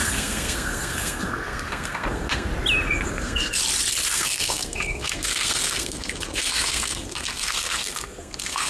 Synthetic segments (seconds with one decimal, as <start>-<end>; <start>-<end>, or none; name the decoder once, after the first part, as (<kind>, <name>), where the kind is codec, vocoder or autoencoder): 0.0-2.5 (codec, SNAC); 3.1-3.6; 4.1-8.7